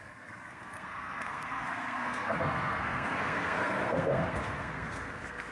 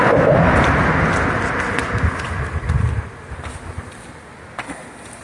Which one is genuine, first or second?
second